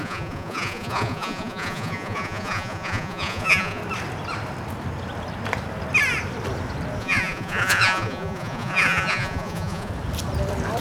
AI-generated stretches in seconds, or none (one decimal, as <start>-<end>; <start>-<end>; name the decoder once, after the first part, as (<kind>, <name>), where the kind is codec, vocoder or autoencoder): 0.0-3.8 (vocoder, Vocos); 7.0-9.9